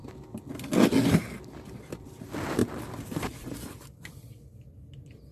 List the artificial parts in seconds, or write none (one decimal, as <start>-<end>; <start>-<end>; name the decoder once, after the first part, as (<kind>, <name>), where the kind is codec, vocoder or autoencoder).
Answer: none